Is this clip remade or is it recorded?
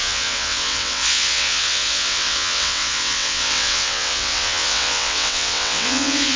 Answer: remade